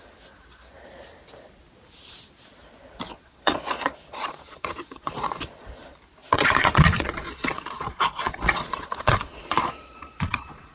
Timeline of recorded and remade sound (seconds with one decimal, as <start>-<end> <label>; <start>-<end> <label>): 0.0-3.1 recorded; 3.1-5.4 remade; 5.4-6.2 recorded; 6.2-10.7 remade